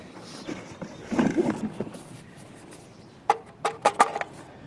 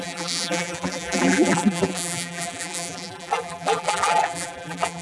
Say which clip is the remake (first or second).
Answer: second